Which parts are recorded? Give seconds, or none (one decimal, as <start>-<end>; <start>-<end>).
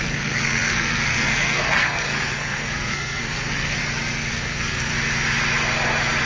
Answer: 3.8-4.3; 4.9-6.3